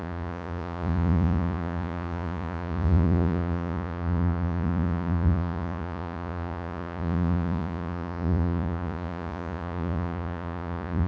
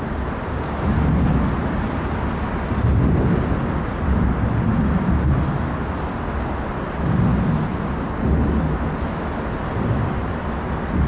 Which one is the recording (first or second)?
second